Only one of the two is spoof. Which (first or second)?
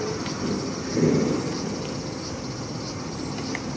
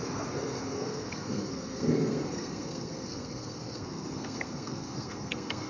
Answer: second